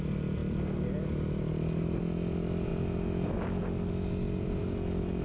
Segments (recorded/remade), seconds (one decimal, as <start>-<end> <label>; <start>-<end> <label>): 0.0-5.2 recorded